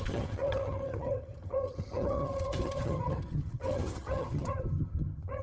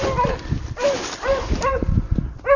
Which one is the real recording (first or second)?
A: second